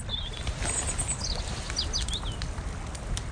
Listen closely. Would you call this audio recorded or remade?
recorded